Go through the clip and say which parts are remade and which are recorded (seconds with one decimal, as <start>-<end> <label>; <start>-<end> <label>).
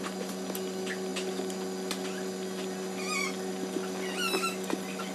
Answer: 0.0-5.1 recorded